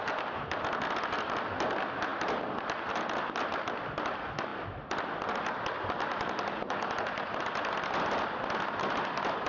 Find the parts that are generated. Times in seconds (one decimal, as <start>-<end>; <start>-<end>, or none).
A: none